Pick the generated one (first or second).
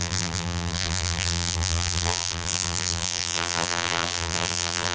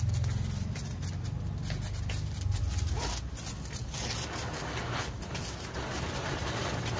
first